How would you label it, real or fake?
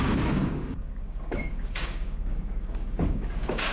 fake